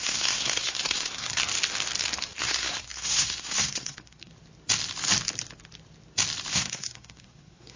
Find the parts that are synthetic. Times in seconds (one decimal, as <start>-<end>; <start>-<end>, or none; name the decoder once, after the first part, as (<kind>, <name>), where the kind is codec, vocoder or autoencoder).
0.0-1.4 (codec, SNAC); 2.4-4.3; 6.5-7.8